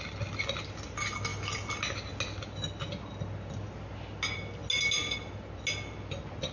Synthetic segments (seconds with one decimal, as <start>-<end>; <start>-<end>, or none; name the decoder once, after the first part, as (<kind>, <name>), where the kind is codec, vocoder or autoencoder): none